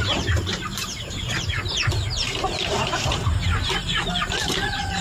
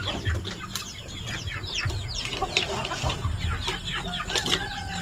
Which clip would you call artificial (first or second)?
first